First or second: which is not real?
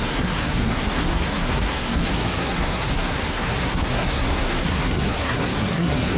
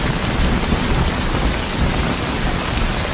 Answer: first